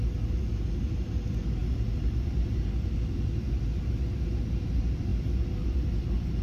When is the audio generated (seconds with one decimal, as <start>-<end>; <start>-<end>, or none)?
none